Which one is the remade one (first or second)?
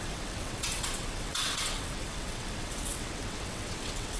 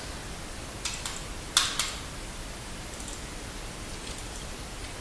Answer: first